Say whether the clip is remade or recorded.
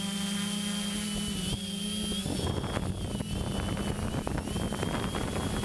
recorded